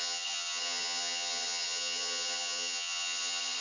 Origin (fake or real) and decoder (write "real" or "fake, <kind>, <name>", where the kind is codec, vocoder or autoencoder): fake, vocoder, HiFi-GAN